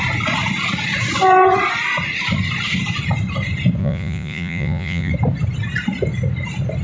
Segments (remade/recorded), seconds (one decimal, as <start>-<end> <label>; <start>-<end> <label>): 0.0-3.8 recorded; 3.8-5.1 remade; 5.1-6.8 recorded